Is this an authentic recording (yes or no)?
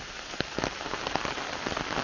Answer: yes